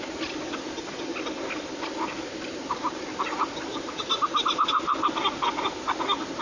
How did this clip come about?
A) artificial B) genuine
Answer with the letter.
B